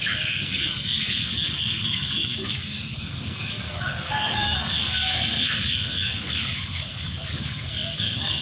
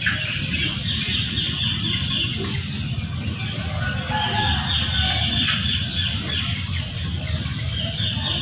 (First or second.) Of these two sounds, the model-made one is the first